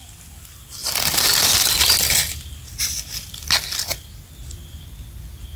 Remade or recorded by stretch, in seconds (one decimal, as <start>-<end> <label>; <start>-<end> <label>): 0.0-5.6 recorded

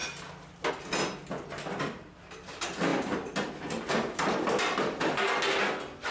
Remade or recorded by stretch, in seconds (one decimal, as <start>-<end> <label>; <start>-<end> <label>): 0.0-6.1 recorded

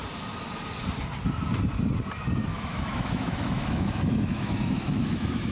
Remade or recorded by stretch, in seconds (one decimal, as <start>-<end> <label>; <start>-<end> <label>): 0.0-2.5 recorded; 2.5-5.5 remade

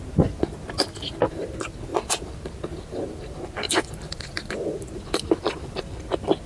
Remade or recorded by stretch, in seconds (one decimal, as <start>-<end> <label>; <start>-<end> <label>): 0.0-6.5 recorded